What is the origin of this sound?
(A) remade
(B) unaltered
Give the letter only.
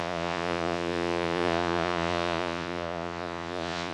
A